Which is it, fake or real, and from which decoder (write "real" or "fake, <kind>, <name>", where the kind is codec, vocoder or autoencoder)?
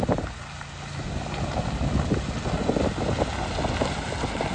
real